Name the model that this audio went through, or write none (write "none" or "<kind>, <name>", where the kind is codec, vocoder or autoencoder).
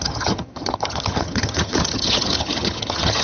vocoder, HiFi-GAN